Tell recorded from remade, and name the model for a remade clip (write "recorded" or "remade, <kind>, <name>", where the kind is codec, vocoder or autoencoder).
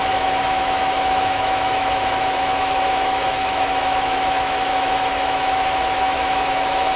remade, autoencoder, DAC-VAE